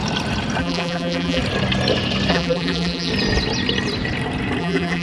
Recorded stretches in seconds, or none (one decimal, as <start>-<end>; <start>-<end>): 0.0-0.6; 1.4-2.3; 3.1-4.6